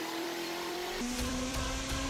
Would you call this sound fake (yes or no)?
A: yes